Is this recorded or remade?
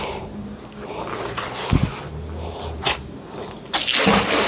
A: recorded